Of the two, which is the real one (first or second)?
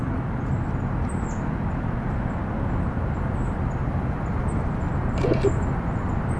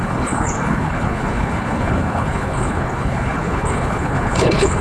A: first